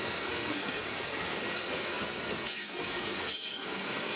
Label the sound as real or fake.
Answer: fake